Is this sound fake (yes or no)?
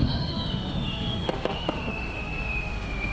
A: yes